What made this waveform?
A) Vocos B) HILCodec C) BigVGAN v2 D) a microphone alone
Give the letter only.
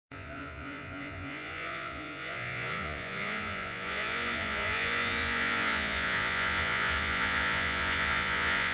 A